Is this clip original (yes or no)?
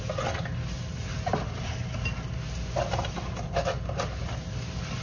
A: yes